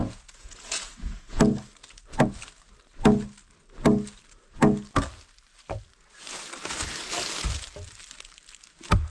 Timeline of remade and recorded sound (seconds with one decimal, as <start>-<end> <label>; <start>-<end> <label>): 0.0-1.4 remade; 1.4-9.1 recorded